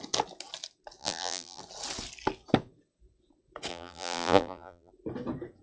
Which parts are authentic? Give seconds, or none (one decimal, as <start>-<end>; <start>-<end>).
0.0-1.0; 1.6-3.7; 4.9-5.6